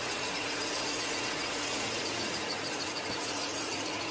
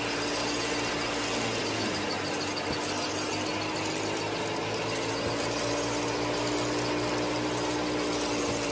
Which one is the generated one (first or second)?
first